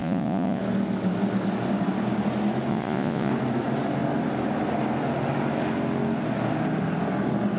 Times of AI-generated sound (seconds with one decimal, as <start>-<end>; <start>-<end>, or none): 0.0-0.6; 2.7-3.3

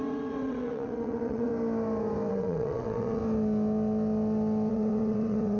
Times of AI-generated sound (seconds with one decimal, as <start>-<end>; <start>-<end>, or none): 0.0-1.5; 2.3-3.2; 4.7-5.6

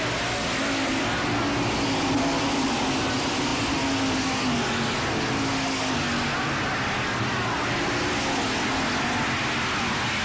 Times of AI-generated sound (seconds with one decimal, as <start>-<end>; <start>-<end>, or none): none

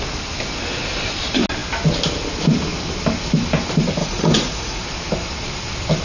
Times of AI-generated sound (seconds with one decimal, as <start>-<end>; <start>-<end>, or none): 4.0-4.8

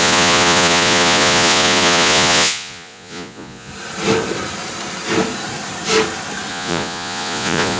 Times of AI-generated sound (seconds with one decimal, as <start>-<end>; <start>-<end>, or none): 0.0-3.7; 6.5-7.8

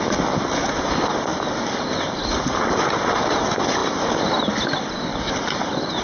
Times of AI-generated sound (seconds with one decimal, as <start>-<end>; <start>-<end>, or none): none